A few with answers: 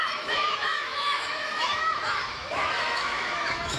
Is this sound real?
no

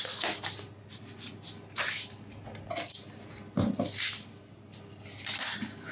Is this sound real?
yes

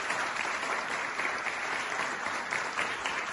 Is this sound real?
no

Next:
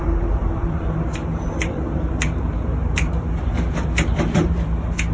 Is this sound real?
no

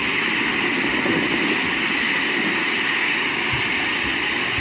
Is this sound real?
yes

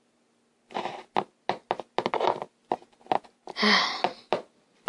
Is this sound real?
yes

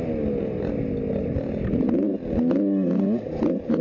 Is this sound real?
yes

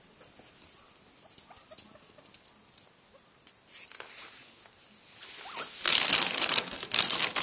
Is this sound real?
yes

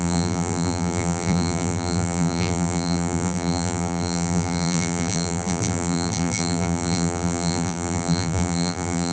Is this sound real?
no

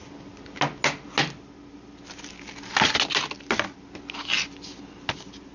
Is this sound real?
yes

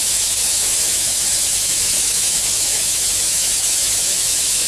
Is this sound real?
no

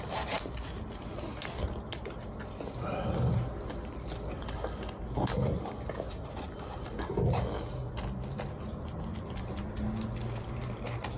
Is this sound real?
yes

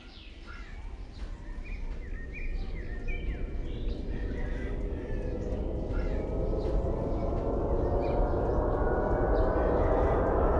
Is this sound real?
yes